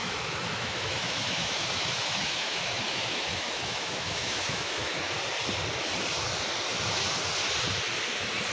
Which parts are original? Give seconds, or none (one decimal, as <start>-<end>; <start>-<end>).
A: 5.0-8.5